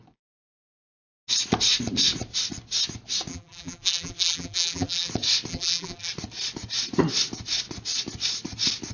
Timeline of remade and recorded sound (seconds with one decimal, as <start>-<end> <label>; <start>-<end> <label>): 0.0-3.3 recorded; 3.3-5.1 remade; 5.1-5.5 recorded; 5.5-6.1 remade; 6.1-8.9 recorded